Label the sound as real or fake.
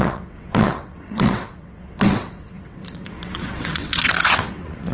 fake